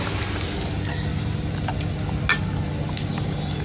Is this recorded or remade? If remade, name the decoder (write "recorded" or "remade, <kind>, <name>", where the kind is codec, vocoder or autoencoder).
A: recorded